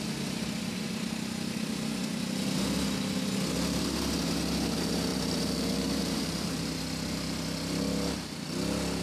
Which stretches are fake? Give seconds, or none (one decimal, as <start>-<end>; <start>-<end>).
5.1-6.6